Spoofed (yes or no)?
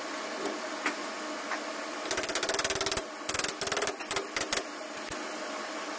no